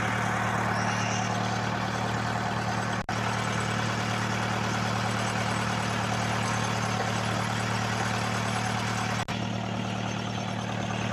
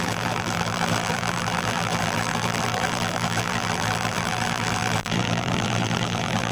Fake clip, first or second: second